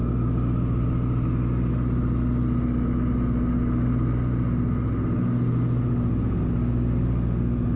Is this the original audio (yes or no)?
yes